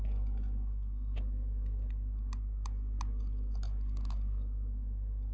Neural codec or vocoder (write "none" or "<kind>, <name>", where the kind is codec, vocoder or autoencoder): none